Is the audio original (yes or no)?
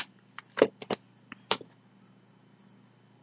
yes